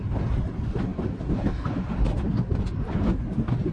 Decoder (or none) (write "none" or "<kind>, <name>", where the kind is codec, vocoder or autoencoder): none